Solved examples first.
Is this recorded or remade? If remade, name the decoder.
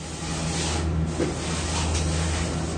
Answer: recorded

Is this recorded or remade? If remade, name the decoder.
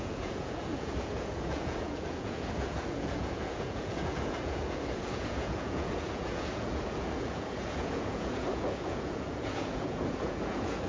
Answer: remade, vocoder, Vocos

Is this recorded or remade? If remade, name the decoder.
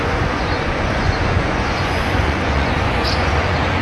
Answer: remade, vocoder, Vocos